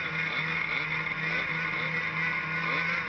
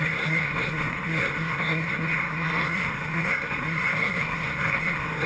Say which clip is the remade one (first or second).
second